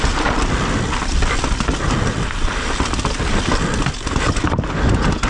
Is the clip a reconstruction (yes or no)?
no